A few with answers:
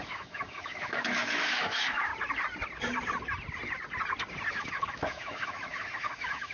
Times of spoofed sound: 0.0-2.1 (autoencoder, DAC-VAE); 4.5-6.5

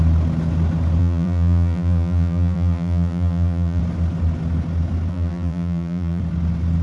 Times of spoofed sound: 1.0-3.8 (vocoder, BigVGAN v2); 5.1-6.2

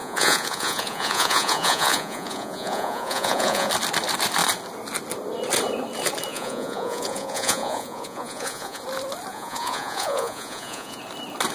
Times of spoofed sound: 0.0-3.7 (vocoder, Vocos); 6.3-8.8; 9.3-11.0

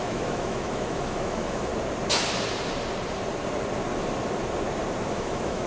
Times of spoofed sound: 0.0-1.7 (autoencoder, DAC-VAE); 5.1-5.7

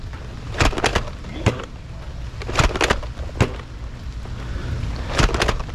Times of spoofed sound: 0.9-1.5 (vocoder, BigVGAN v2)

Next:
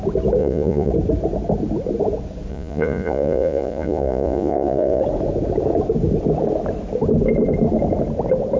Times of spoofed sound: 0.4-0.9 (vocoder, Vocos); 2.5-5.0